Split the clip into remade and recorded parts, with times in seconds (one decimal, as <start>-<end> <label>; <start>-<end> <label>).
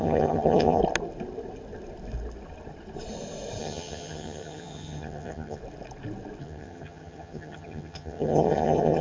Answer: 0.0-0.8 remade; 0.8-3.6 recorded; 3.6-5.6 remade; 5.6-6.4 recorded; 6.4-9.0 remade